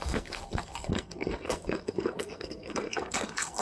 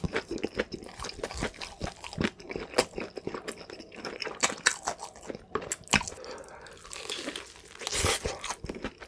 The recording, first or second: second